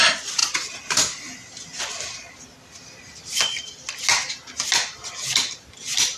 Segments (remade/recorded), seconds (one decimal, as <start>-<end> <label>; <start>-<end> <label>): 0.0-6.2 recorded